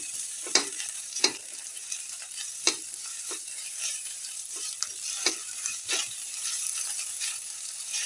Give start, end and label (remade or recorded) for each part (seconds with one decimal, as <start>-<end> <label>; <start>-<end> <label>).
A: 0.0-4.9 remade; 4.9-5.4 recorded; 5.4-8.1 remade